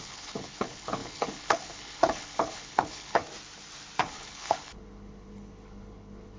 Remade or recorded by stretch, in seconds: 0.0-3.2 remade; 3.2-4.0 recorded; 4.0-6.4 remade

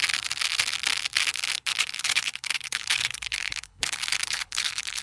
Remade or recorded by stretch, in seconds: 0.0-1.7 recorded; 1.7-5.0 remade